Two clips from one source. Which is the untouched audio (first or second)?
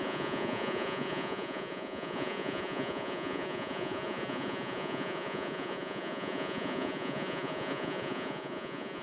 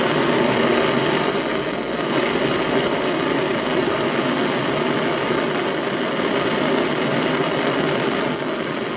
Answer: second